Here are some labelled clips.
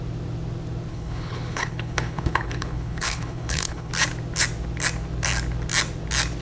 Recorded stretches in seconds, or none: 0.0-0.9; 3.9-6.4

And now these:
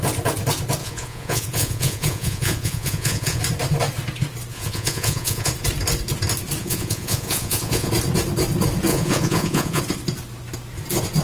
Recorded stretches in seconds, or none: 0.0-0.8; 3.4-4.5; 5.5-6.6; 7.9-8.9; 9.8-11.2